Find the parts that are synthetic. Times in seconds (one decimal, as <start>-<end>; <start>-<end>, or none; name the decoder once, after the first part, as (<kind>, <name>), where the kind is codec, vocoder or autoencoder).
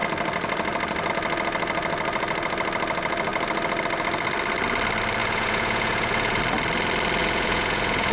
5.2-6.4 (vocoder, Vocos); 7.2-8.1